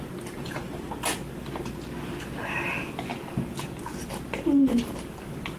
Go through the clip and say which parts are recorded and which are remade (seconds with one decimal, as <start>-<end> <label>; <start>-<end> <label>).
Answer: 0.0-4.7 recorded; 4.7-5.6 remade